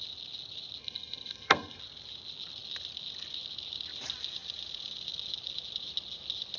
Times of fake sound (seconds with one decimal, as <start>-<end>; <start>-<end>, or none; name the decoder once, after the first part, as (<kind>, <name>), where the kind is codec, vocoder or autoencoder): 0.8-1.8 (codec, SNAC)